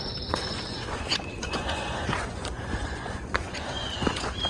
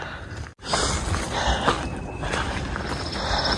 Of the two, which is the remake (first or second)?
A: first